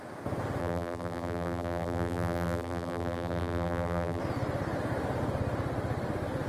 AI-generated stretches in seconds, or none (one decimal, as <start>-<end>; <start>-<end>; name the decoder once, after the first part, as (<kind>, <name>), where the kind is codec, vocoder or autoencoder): 0.6-4.2 (vocoder, BigVGAN v2)